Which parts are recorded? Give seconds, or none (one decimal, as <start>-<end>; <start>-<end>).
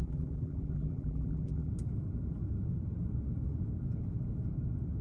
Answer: 1.7-5.0